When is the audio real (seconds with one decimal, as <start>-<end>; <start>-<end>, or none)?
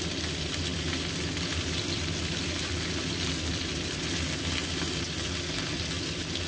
0.0-6.5